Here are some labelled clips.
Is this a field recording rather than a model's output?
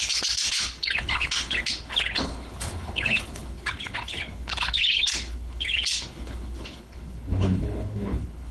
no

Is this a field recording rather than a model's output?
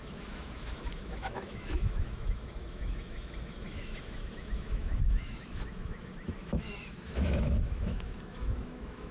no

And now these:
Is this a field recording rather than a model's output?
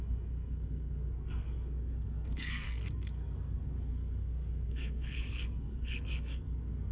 no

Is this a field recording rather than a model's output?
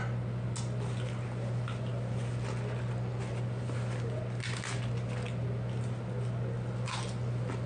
yes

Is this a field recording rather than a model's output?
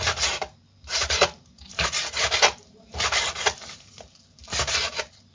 no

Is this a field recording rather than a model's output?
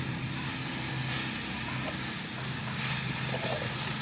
yes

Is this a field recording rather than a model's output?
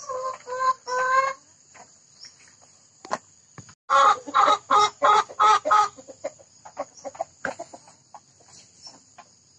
yes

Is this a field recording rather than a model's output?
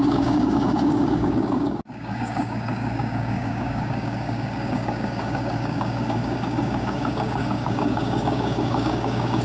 no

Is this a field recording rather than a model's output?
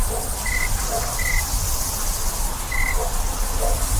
no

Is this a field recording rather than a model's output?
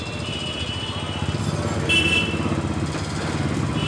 yes